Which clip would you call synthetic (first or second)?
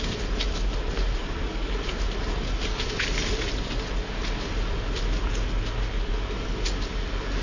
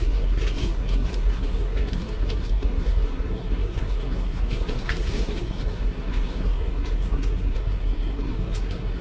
second